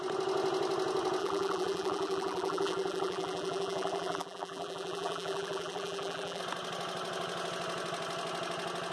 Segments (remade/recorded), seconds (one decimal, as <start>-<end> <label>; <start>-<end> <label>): 0.0-1.2 recorded; 1.2-6.4 remade; 6.4-8.9 recorded